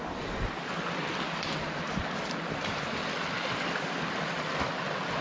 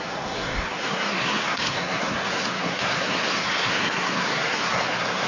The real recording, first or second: first